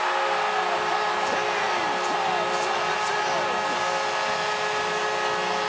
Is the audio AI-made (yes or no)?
no